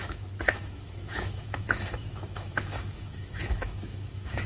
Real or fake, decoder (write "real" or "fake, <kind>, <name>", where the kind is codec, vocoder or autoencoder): fake, autoencoder, DAC-VAE